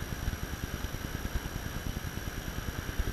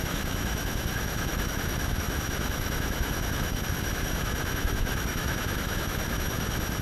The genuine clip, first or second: first